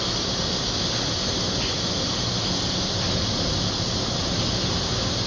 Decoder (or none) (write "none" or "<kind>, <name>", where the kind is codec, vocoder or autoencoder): none